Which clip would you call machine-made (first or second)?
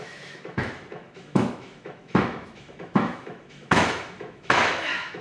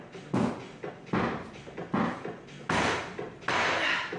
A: first